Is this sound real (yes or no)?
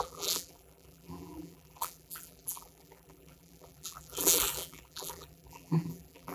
no